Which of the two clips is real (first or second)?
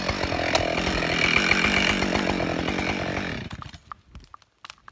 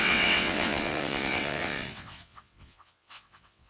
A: first